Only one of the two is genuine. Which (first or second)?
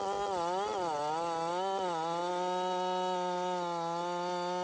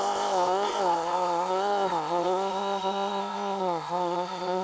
first